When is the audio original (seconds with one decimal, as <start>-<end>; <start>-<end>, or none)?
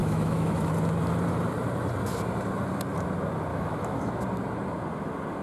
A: 0.7-3.5; 4.2-5.4